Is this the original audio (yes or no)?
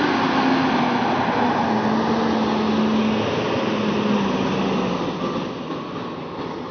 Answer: yes